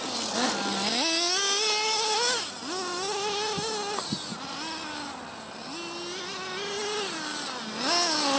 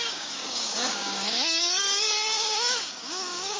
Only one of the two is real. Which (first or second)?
first